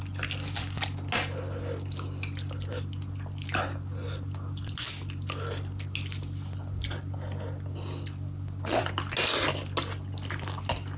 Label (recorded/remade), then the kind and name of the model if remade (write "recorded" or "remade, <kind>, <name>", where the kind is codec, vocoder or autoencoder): recorded